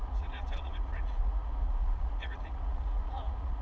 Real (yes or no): no